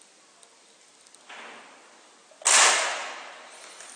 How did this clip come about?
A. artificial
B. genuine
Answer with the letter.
B